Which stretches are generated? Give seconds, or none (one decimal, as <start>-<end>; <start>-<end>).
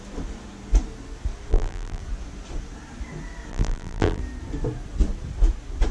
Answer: 1.5-2.0; 3.5-4.2